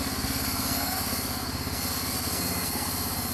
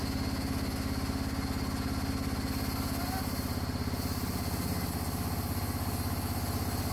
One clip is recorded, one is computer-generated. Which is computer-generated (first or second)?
first